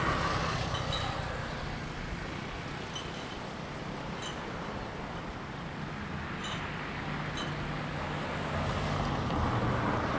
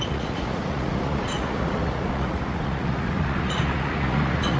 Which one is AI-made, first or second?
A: second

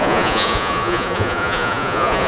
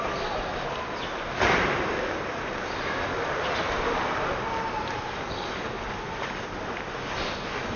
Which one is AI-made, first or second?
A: first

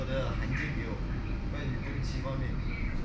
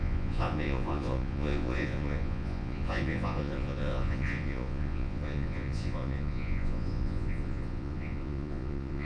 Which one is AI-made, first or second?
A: second